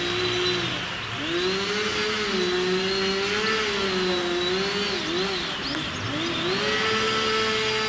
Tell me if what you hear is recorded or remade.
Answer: recorded